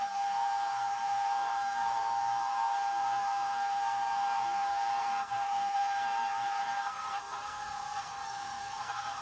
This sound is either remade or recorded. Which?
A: remade